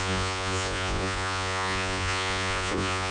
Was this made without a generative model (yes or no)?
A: no